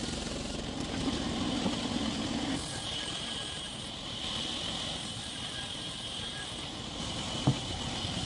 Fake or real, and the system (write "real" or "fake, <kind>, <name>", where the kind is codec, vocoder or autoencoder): fake, vocoder, BigVGAN v2